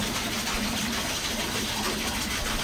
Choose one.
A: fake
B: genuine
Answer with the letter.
B